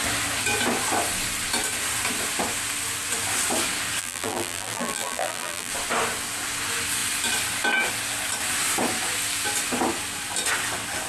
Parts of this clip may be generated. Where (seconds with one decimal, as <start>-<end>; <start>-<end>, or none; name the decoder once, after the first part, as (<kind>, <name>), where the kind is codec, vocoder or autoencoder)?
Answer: 4.0-5.7 (vocoder, BigVGAN v2)

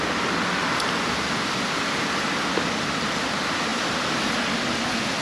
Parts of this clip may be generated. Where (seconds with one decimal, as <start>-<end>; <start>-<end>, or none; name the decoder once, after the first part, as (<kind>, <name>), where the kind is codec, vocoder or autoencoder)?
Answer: none